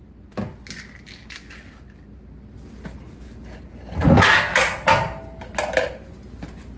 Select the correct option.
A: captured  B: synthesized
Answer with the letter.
A